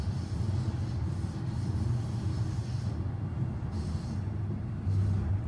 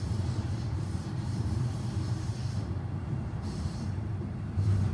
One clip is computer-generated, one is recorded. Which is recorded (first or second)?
first